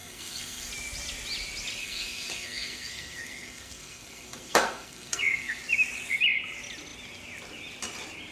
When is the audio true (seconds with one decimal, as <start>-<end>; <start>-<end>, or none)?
0.7-1.8; 5.6-8.3